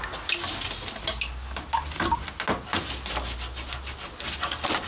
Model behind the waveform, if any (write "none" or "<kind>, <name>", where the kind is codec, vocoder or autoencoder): none